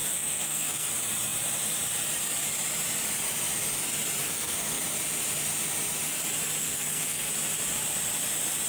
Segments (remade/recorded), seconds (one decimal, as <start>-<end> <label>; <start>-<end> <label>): 0.0-0.9 remade; 0.9-4.2 recorded; 4.2-4.8 remade; 4.8-6.6 recorded; 6.6-7.3 remade; 7.3-8.7 recorded